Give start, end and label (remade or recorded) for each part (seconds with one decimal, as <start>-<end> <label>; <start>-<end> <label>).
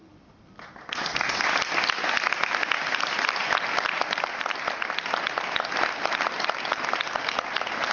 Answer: 0.0-1.5 recorded; 1.5-3.4 remade; 3.4-4.4 recorded; 4.4-7.9 remade